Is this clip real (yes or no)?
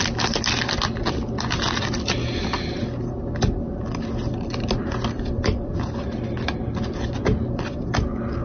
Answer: yes